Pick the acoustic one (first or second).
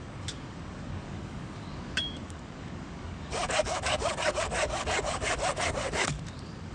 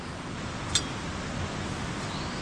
second